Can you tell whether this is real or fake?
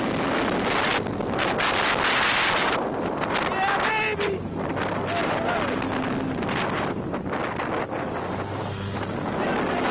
real